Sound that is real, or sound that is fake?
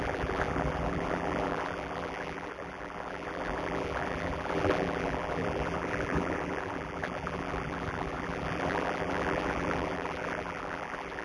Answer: fake